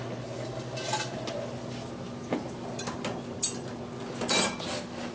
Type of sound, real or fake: real